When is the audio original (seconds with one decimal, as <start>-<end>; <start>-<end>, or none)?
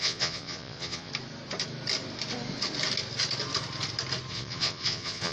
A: 1.1-4.3